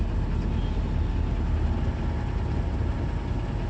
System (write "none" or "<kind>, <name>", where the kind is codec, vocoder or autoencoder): none